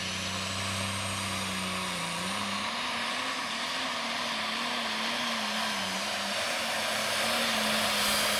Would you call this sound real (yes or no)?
yes